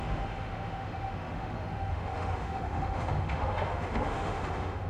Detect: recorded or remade remade